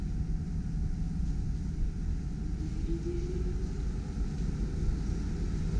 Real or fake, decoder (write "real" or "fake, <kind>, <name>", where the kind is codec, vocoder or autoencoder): real